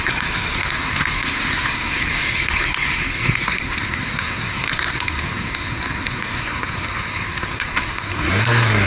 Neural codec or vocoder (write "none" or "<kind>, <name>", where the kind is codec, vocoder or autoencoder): codec, SNAC